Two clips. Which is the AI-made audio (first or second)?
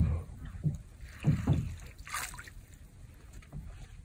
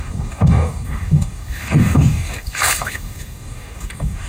second